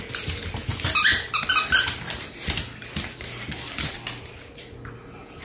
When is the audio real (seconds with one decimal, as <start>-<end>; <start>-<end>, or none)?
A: 0.0-5.4